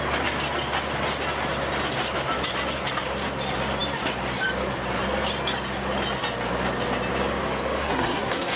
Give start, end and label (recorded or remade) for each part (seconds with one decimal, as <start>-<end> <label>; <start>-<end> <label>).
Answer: 0.0-7.8 recorded; 7.8-8.6 remade